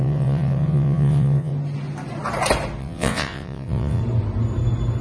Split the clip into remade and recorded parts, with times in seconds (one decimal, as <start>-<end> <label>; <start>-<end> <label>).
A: 0.0-1.5 remade; 1.5-2.8 recorded; 2.8-4.0 remade; 4.0-5.0 recorded